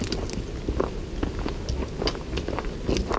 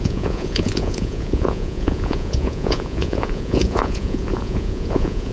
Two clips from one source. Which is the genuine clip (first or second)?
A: first